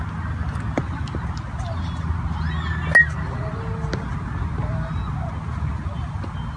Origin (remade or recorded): recorded